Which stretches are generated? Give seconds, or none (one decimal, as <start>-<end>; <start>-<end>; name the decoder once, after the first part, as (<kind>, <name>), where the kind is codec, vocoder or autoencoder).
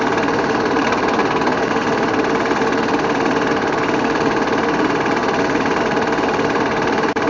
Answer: 0.0-1.2 (vocoder, BigVGAN v2); 3.5-7.3